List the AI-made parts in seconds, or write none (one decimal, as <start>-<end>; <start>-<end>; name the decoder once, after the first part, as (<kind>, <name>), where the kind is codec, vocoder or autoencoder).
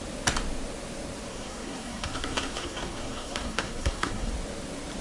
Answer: 1.3-4.3 (codec, SNAC)